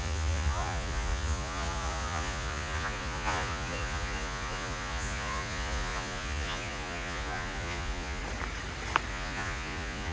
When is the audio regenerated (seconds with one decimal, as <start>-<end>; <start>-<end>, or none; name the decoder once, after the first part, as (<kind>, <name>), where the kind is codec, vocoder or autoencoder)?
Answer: 0.0-8.2 (vocoder, Vocos); 9.1-10.1